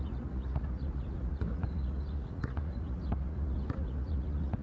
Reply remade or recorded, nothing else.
remade